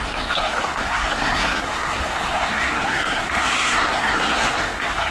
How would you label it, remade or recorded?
remade